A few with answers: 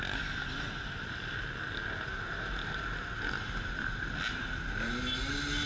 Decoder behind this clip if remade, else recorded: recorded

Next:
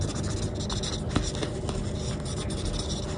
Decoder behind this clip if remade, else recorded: recorded